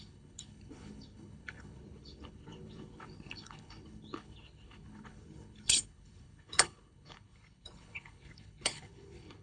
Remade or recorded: remade